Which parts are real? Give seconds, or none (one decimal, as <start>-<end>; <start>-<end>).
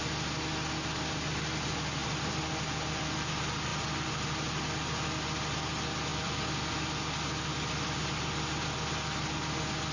0.0-2.0; 2.5-6.1; 6.7-7.5; 8.0-9.9